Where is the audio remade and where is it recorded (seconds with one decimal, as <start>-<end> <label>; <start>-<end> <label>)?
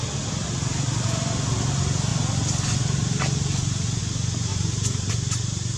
0.0-4.5 recorded; 4.5-5.1 remade; 5.1-5.8 recorded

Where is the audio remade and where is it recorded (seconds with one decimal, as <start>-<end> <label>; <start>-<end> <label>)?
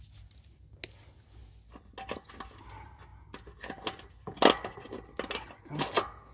0.0-6.3 recorded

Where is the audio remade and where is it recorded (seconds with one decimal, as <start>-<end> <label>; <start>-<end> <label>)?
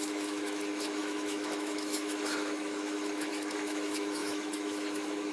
0.0-5.3 remade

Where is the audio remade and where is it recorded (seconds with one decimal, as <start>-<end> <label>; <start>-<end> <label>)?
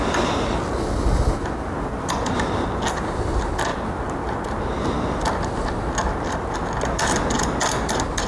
0.0-8.3 recorded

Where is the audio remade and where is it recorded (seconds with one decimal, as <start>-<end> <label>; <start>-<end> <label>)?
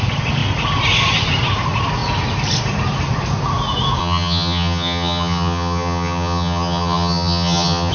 0.0-4.0 recorded; 4.0-7.9 remade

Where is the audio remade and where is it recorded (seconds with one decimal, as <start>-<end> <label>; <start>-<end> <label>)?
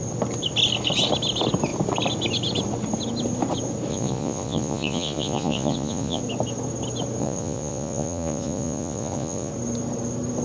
0.0-3.9 recorded; 3.9-6.2 remade; 6.2-7.2 recorded; 7.2-9.5 remade; 9.5-10.4 recorded